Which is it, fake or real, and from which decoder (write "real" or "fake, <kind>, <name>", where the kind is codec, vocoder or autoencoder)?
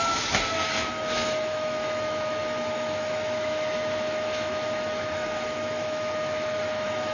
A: fake, autoencoder, DAC-VAE